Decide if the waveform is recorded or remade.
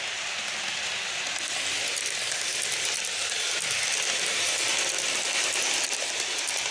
recorded